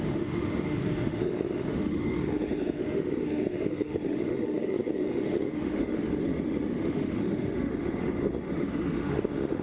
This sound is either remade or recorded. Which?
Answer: remade